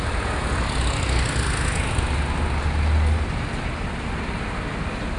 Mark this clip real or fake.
real